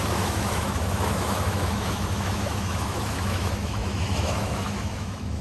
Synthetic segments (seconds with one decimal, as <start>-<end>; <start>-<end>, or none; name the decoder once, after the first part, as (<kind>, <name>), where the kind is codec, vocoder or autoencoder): 0.0-5.4 (autoencoder, DAC-VAE)